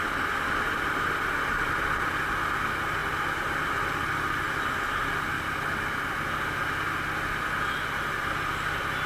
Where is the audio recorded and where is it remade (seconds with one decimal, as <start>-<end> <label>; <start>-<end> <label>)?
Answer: 0.0-9.1 recorded